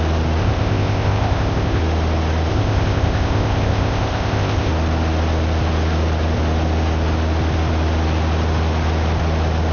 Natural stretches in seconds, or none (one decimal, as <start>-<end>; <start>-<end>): 0.0-0.4; 1.8-2.5; 4.7-9.7